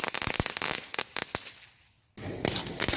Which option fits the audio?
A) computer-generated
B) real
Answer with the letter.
B